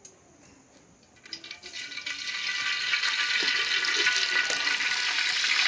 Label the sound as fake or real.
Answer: real